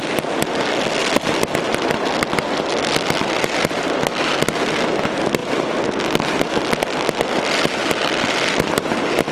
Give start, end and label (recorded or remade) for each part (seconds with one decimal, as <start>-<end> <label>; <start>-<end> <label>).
0.0-9.3 recorded